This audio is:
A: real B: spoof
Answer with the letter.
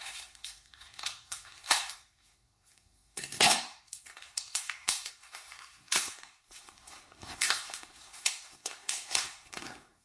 B